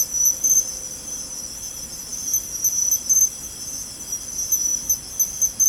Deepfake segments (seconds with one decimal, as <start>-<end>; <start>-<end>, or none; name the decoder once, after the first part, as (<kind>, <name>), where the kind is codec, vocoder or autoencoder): none